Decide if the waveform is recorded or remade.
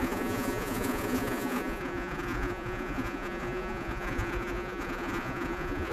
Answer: remade